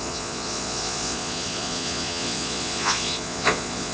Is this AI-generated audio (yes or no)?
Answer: yes